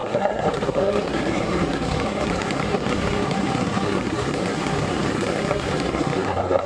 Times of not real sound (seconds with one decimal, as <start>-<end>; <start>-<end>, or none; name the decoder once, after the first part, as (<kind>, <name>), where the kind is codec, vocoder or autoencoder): 0.0-6.7 (codec, SNAC)